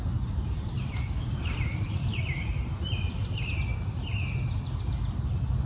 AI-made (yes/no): no